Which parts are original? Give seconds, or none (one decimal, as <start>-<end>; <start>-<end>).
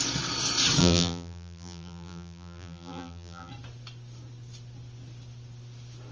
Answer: 0.0-0.8; 3.5-6.1